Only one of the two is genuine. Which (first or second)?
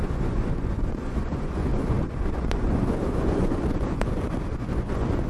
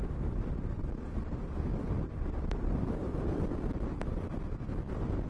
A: second